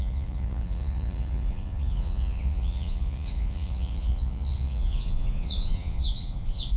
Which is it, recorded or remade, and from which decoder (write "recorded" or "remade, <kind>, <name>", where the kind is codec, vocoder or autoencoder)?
remade, vocoder, Vocos